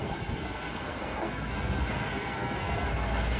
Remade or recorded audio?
remade